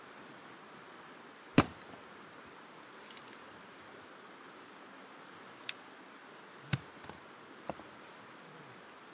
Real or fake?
real